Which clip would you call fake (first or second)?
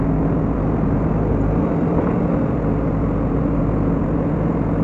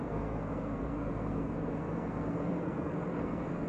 second